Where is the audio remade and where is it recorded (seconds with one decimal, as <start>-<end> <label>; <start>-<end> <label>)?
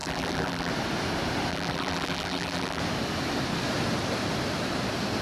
0.0-0.7 remade; 0.7-1.5 recorded; 1.5-2.8 remade; 2.8-5.2 recorded